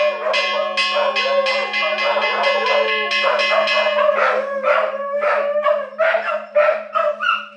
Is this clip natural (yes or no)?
yes